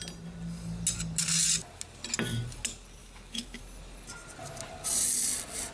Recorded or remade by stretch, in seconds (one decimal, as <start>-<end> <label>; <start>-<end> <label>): 0.0-3.0 recorded; 3.0-3.6 remade; 3.6-5.7 recorded

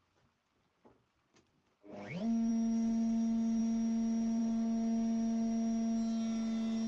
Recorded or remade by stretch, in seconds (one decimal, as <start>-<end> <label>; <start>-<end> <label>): 0.0-6.9 recorded